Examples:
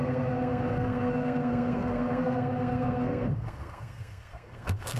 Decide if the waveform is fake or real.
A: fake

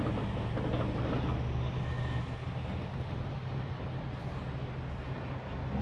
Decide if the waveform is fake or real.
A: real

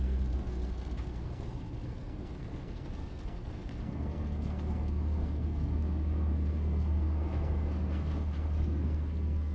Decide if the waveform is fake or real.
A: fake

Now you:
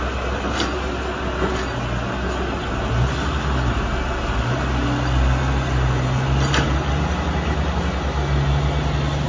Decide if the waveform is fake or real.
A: real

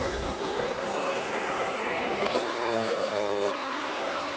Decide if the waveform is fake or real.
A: fake